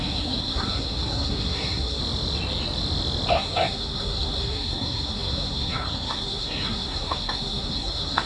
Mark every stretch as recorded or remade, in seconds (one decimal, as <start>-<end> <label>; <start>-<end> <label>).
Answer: 0.0-2.0 remade; 2.0-3.3 recorded; 3.3-8.3 remade